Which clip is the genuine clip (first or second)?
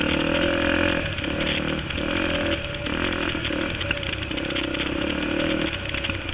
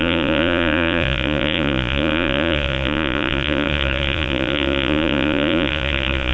first